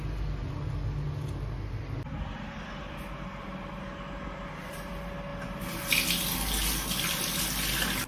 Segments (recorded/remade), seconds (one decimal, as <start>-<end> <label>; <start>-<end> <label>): 0.0-8.1 recorded